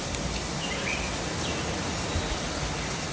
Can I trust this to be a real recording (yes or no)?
yes